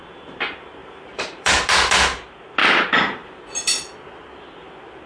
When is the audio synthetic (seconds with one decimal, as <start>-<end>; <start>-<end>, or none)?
0.8-1.5; 2.6-3.4